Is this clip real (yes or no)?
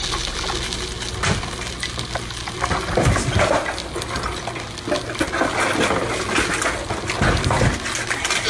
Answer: yes